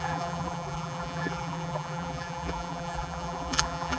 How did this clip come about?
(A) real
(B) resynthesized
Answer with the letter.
B